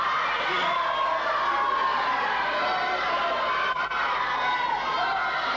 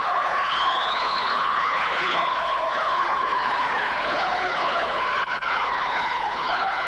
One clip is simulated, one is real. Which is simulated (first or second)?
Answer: second